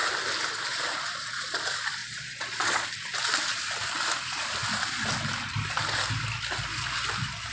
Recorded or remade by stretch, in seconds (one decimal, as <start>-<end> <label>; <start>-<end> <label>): 0.0-2.0 recorded; 2.0-2.9 remade; 2.9-7.5 recorded